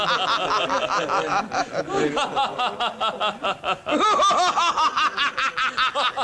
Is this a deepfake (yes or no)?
no